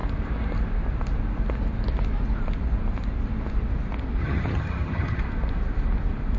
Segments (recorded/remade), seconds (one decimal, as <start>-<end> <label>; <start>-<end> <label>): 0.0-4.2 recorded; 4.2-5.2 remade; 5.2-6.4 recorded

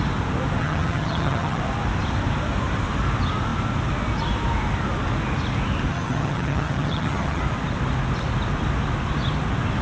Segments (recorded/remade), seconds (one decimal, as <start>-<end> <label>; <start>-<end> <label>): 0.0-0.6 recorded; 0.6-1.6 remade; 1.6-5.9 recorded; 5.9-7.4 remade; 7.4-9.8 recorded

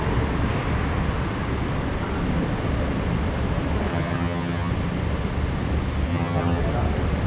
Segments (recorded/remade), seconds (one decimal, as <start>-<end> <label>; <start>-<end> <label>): 0.0-3.9 recorded; 3.9-4.7 remade; 4.7-6.1 recorded; 6.1-6.6 remade; 6.6-7.3 recorded

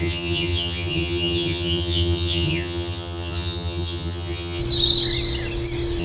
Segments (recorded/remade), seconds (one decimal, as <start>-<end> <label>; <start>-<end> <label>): 0.0-4.6 remade; 4.6-6.0 recorded

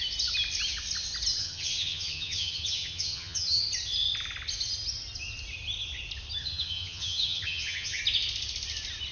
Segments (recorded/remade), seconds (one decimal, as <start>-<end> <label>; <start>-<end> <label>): 0.0-1.4 recorded; 1.4-3.6 remade; 3.6-6.4 recorded; 6.4-8.0 remade; 8.0-9.1 recorded

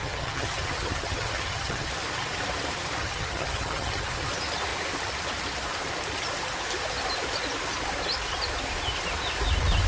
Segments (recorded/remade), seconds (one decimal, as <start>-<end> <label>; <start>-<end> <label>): 0.0-1.9 remade; 1.9-3.0 recorded; 3.0-4.3 remade; 4.3-9.9 recorded

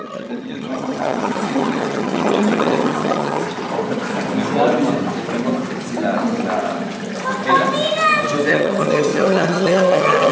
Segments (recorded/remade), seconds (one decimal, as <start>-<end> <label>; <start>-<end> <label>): 0.0-3.4 remade; 3.4-8.5 recorded; 8.5-10.3 remade

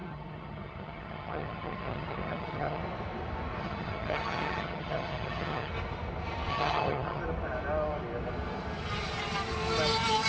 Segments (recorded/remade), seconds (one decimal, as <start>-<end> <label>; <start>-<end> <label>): 0.0-2.8 remade; 2.8-3.6 recorded; 3.6-5.7 remade; 5.7-6.5 recorded; 6.5-7.2 remade; 7.2-10.3 recorded